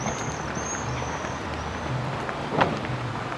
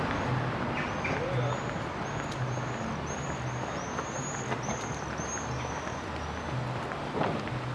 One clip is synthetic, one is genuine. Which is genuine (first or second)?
second